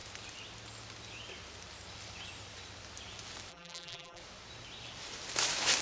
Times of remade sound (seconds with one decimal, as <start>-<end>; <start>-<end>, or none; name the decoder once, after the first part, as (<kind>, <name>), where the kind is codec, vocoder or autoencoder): 3.5-4.2 (vocoder, BigVGAN v2)